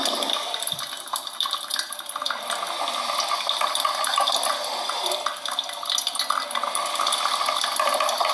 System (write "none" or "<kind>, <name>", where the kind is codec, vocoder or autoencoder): none